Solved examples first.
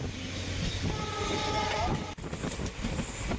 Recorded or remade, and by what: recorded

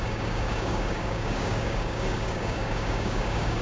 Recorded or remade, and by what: remade, codec, DAC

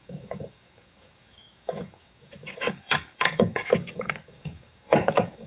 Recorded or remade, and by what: remade, codec, DAC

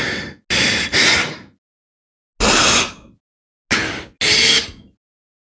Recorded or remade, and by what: recorded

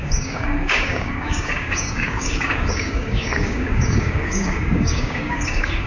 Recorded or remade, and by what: remade, codec, DAC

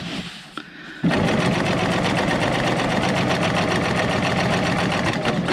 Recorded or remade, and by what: recorded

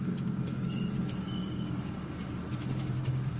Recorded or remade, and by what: remade, codec, DAC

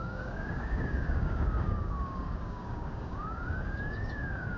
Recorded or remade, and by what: remade, codec, DAC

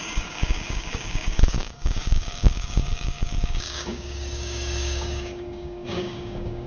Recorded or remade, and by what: remade, codec, DAC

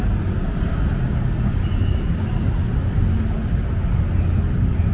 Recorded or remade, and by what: recorded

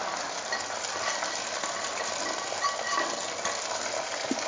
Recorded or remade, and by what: recorded